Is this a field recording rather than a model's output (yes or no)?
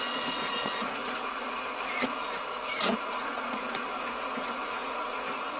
no